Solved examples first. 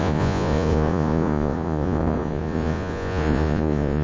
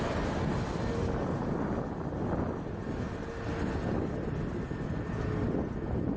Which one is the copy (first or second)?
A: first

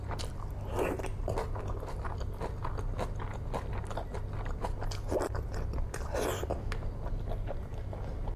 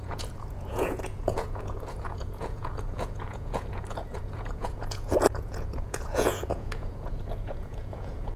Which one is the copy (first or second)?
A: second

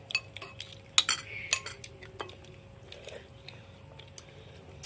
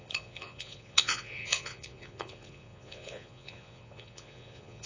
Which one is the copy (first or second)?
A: second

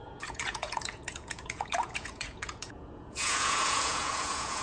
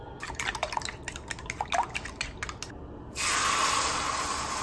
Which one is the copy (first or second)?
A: first